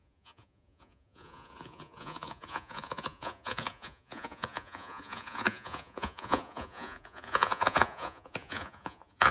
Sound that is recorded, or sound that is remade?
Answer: remade